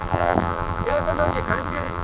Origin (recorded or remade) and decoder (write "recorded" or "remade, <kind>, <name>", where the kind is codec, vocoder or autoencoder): remade, vocoder, BigVGAN v2